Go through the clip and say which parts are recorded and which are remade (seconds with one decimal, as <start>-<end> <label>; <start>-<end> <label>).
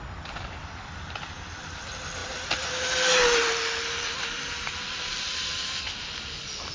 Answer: 0.0-6.7 recorded